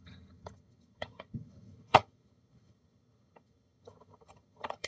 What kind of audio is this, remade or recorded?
remade